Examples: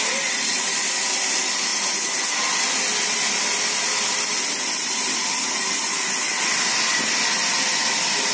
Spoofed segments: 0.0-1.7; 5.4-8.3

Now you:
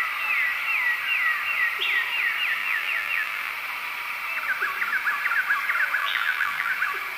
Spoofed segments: 2.6-3.5; 6.0-6.7

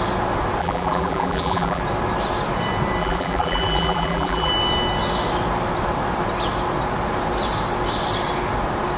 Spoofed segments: 0.6-1.8; 3.0-4.5